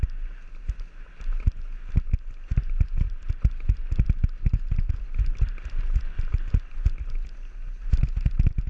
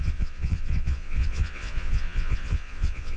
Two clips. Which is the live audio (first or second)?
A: first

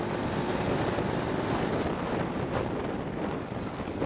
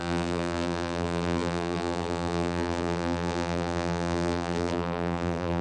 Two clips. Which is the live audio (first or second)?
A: first